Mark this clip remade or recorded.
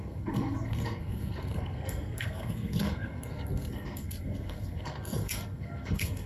remade